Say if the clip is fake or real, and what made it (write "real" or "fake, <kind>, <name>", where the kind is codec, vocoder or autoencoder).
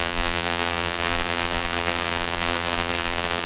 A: fake, vocoder, BigVGAN v2